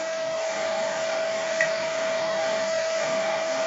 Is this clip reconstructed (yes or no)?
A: yes